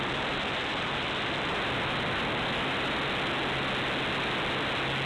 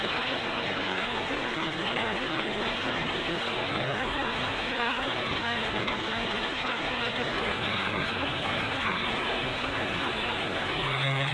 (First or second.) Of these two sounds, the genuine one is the first